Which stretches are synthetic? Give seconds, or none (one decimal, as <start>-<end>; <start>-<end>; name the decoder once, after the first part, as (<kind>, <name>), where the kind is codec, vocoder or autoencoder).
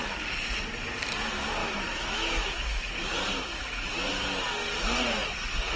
1.6-2.9 (autoencoder, DAC-VAE); 3.5-4.1